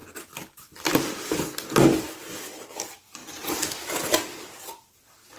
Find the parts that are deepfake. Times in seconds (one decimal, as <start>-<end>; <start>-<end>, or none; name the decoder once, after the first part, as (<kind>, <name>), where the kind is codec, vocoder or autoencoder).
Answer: none